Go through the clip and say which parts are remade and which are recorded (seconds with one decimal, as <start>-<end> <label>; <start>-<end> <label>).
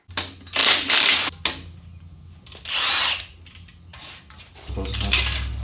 0.0-5.6 recorded